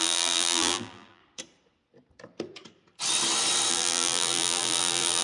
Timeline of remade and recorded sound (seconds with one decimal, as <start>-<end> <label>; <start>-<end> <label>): 0.0-1.2 remade; 1.2-3.7 recorded; 3.7-5.2 remade